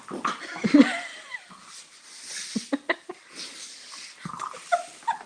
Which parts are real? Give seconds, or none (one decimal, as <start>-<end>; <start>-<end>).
0.0-5.3